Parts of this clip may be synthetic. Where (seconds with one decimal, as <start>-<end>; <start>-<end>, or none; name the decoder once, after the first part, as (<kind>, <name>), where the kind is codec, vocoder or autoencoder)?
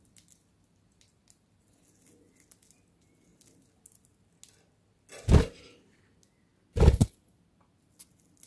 none